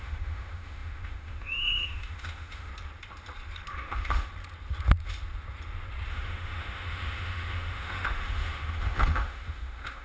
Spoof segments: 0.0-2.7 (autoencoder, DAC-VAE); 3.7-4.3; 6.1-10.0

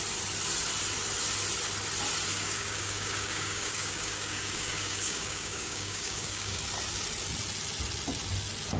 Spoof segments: 2.3-6.6 (codec, DAC)

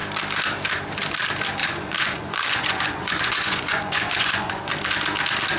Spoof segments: 1.6-4.7 (vocoder, Vocos)

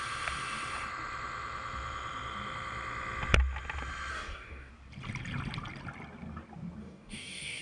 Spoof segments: 4.1-4.7 (codec, DAC); 6.8-7.6

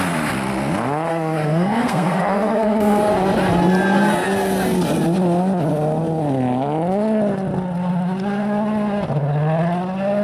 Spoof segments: 1.1-3.1 (codec, SNAC)